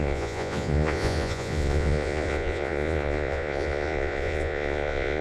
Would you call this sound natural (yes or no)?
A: no